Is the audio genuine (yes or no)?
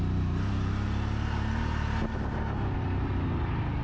yes